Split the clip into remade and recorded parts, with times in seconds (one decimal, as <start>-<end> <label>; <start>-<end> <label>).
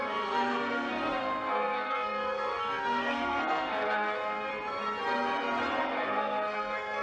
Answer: 0.0-4.5 remade; 4.5-5.8 recorded; 5.8-7.0 remade